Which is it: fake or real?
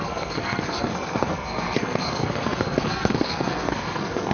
fake